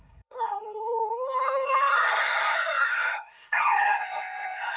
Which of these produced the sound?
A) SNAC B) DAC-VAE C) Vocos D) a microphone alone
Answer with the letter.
A